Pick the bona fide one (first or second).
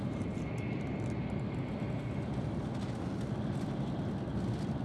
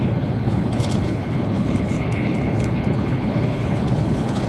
first